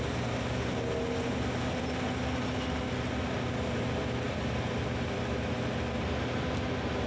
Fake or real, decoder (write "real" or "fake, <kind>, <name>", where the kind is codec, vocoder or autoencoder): real